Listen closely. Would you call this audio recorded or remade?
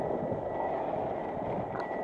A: recorded